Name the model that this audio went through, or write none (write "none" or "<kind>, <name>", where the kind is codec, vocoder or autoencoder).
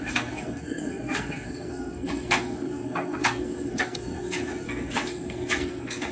codec, SNAC